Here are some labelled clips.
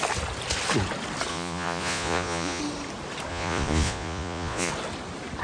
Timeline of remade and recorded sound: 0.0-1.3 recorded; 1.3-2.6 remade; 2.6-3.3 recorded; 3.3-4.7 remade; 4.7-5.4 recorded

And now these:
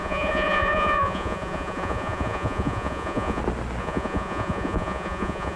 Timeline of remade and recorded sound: 0.0-3.4 remade; 3.4-3.8 recorded; 3.8-5.6 remade

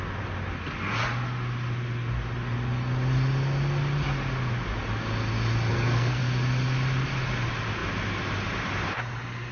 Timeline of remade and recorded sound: 0.0-5.7 recorded; 5.7-6.2 remade; 6.2-9.5 recorded

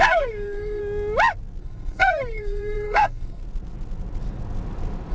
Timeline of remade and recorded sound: 0.0-0.8 remade; 0.8-1.6 recorded; 1.6-3.4 remade; 3.4-5.1 recorded

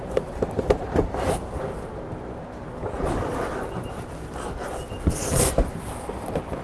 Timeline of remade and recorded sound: 0.0-1.9 remade; 1.9-5.7 recorded; 5.7-6.6 remade

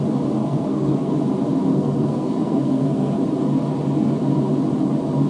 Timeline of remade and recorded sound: 0.0-0.4 recorded; 0.4-1.1 remade; 1.1-1.7 recorded; 1.7-3.2 remade; 3.2-5.3 recorded

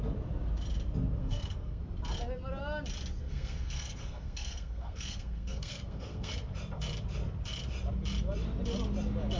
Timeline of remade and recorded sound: 0.0-1.2 recorded; 1.2-1.8 remade; 1.8-3.2 recorded; 3.2-6.3 remade; 6.3-9.4 recorded